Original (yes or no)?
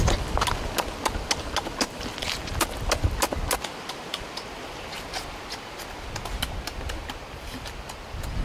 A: yes